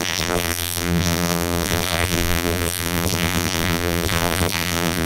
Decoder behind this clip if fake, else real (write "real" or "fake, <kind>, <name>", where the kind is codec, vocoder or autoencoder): fake, vocoder, BigVGAN v2